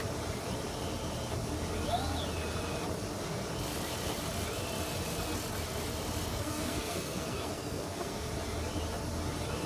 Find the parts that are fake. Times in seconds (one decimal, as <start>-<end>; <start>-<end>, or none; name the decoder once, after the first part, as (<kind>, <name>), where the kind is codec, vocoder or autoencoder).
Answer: 6.3-8.3 (codec, SNAC)